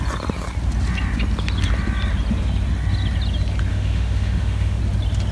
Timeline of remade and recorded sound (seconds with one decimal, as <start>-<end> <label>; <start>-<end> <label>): 0.0-3.7 recorded; 3.7-4.8 remade; 4.8-5.3 recorded